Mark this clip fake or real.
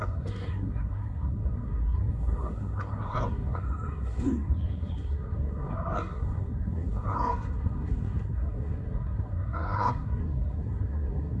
fake